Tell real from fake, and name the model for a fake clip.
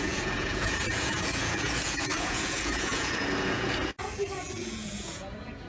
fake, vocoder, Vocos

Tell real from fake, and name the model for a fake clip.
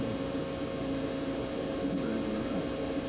real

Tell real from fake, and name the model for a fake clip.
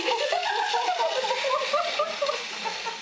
real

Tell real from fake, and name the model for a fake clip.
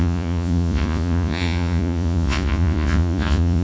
fake, vocoder, Vocos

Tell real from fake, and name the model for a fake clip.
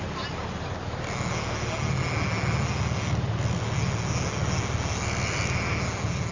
real